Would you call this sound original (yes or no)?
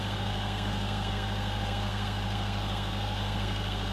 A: no